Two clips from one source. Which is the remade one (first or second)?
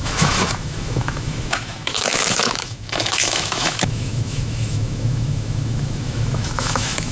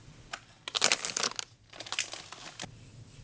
first